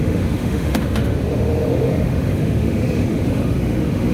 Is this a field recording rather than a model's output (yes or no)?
no